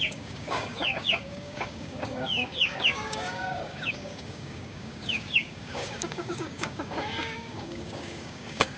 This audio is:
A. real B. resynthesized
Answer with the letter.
B